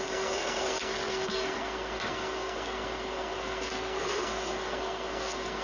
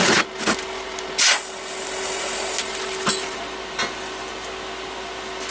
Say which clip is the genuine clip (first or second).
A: second